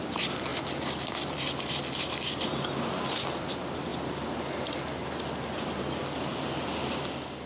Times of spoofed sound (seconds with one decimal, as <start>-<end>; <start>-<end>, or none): none